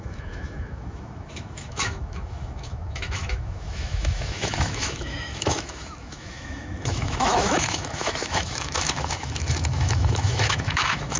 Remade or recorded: remade